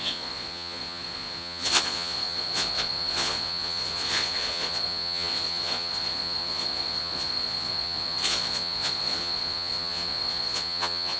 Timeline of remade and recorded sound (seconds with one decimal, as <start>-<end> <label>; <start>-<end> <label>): 0.0-11.2 remade